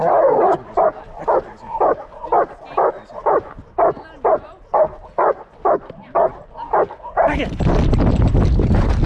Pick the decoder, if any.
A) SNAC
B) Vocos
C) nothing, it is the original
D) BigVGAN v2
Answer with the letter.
C